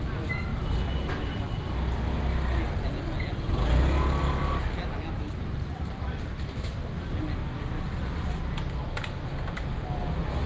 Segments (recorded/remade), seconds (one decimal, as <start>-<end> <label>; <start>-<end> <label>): 0.0-10.5 recorded